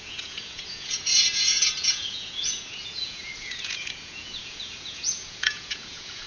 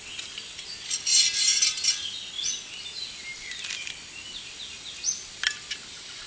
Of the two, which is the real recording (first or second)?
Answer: second